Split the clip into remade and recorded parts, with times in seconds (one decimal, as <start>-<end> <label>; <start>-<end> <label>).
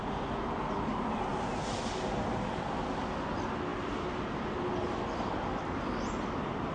0.0-6.7 recorded